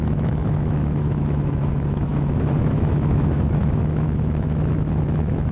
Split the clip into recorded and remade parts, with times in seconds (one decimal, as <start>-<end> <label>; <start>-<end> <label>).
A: 0.0-5.5 remade